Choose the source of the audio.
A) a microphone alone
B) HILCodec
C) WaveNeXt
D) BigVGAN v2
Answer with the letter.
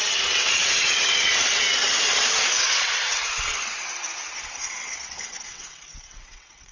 C